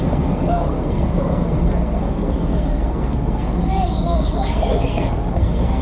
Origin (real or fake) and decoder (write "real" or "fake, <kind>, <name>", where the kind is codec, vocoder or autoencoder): fake, codec, SNAC